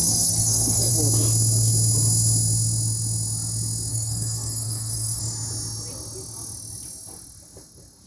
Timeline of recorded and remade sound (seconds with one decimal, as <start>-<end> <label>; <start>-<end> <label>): 0.0-0.9 remade; 0.9-3.9 recorded; 3.9-5.2 remade; 5.2-8.1 recorded

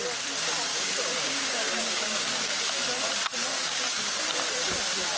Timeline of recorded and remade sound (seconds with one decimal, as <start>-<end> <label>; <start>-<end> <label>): 0.0-0.7 recorded; 0.7-2.6 remade; 2.6-3.5 recorded; 3.5-4.2 remade; 4.2-5.2 recorded

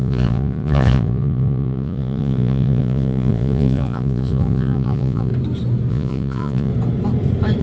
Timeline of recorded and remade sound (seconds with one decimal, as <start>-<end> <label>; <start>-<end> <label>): 0.0-5.3 remade; 5.3-5.9 recorded; 5.9-6.7 remade; 6.7-7.6 recorded

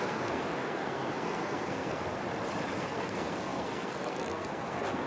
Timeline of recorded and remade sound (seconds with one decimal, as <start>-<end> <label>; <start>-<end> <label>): 0.0-2.2 remade; 2.2-2.8 recorded; 2.8-5.1 remade

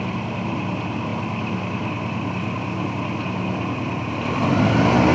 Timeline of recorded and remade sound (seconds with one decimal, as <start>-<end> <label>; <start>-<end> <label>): 0.0-5.1 recorded

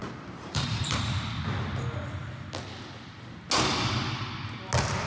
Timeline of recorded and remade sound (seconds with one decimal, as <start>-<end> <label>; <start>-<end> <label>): 0.0-1.1 remade; 1.1-5.1 recorded

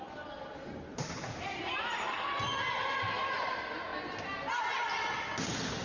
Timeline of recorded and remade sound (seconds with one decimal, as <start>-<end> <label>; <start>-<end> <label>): 0.0-0.9 recorded; 0.9-2.2 remade; 2.2-5.8 recorded